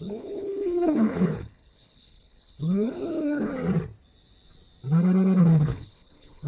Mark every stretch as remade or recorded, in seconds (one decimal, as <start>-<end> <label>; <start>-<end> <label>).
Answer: 0.0-3.5 remade; 3.5-5.4 recorded; 5.4-6.5 remade